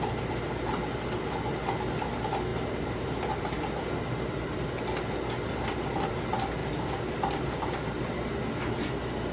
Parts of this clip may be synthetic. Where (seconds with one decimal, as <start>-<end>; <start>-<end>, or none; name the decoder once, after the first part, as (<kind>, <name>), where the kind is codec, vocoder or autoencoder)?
6.6-8.0 (vocoder, BigVGAN v2)